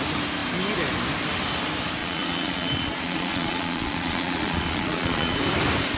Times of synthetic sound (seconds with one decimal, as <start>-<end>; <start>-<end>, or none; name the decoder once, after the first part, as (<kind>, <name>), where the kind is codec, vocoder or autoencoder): 2.0-5.4 (vocoder, Vocos)